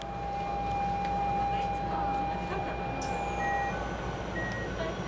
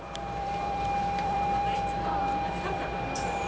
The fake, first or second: second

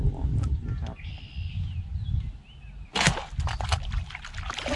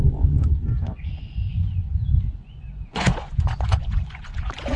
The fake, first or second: second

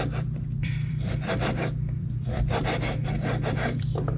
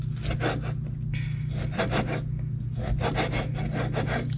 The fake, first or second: first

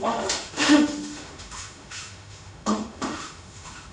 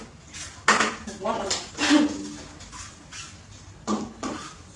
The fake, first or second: first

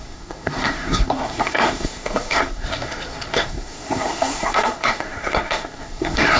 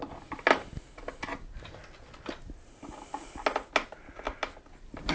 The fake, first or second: first